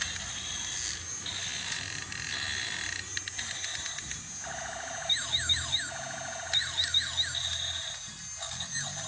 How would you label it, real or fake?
real